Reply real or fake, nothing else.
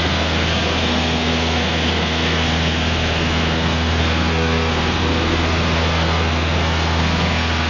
fake